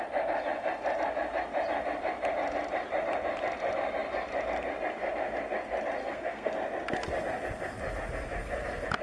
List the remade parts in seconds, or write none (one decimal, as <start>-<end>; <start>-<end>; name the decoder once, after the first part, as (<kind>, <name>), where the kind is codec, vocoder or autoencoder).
6.0-6.5 (codec, SNAC)